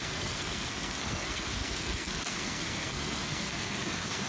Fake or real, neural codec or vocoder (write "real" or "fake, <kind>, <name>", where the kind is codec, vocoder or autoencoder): fake, codec, SNAC